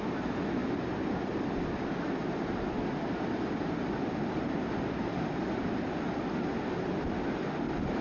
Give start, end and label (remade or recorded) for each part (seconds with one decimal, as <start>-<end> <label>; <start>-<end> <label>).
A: 0.0-8.0 recorded